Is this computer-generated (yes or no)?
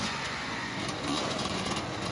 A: yes